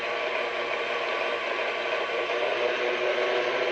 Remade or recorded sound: recorded